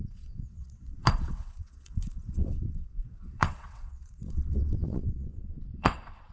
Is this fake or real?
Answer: fake